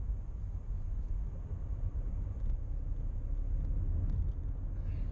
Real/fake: real